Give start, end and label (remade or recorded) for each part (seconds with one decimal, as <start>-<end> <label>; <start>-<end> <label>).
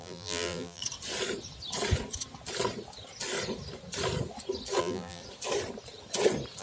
0.0-0.8 remade; 0.8-4.8 recorded; 4.8-5.2 remade; 5.2-6.6 recorded